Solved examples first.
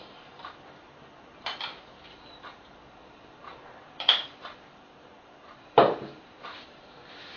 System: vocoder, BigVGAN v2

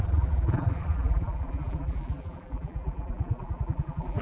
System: vocoder, BigVGAN v2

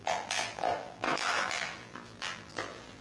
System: vocoder, BigVGAN v2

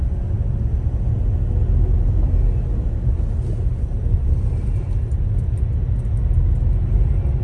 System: none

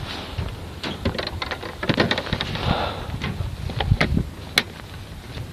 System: none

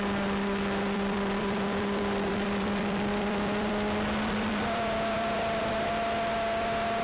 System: vocoder, BigVGAN v2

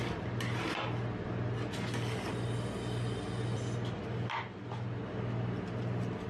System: none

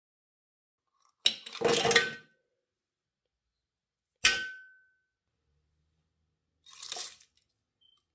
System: none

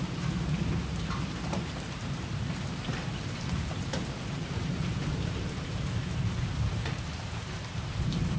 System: vocoder, BigVGAN v2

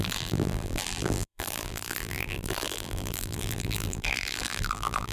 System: vocoder, BigVGAN v2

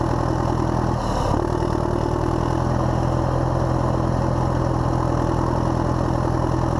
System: none